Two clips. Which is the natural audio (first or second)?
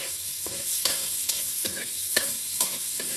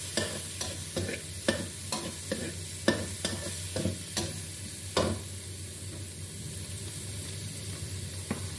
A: second